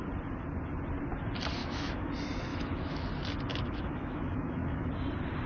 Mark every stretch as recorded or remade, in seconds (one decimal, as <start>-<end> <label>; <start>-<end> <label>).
0.0-1.6 recorded; 1.6-2.1 remade; 2.1-2.5 recorded; 2.5-3.1 remade; 3.1-3.5 recorded; 3.5-4.9 remade; 4.9-5.5 recorded